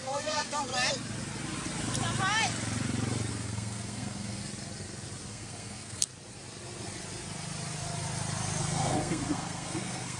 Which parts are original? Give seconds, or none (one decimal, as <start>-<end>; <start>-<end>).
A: 0.7-3.3; 4.4-5.3; 6.1-8.6

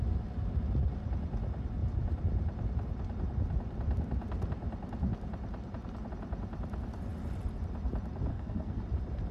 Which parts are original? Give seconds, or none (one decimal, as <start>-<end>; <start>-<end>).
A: 0.0-8.3; 8.8-9.3